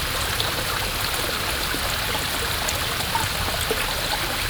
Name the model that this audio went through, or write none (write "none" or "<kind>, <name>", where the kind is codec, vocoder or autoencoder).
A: none